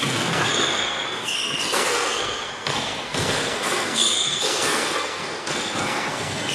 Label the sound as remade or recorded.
remade